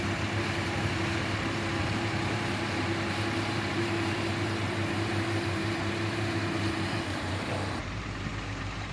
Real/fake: fake